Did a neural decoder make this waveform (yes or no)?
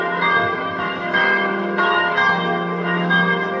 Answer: yes